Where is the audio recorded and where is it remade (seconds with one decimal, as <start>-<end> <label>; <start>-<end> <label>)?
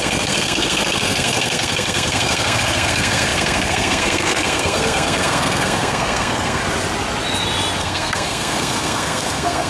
0.0-6.6 remade; 6.6-7.8 recorded; 7.8-9.7 remade